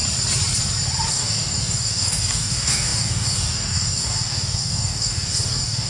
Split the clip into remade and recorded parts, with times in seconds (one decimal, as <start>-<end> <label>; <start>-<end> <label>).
0.0-1.1 recorded; 1.1-5.9 remade